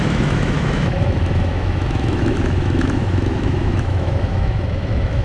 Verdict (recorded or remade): remade